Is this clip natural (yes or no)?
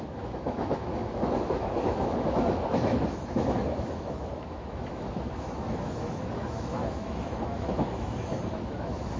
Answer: no